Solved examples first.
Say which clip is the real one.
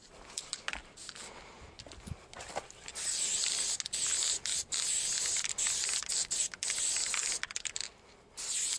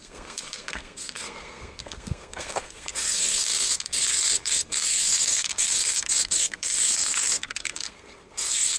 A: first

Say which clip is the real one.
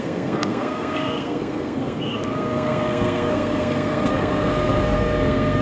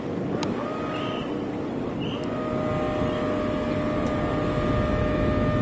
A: second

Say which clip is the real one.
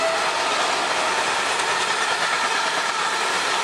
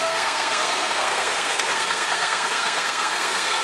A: first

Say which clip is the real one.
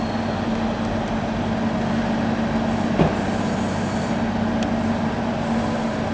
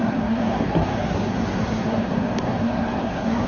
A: first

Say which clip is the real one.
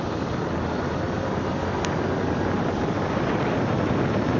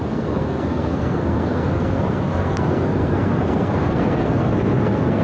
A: first